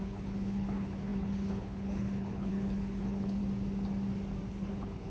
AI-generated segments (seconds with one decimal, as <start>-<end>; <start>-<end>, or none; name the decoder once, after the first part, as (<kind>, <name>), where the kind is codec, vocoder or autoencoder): 0.0-3.4 (codec, HILCodec); 4.5-5.1